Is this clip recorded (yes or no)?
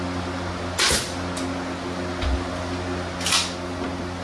yes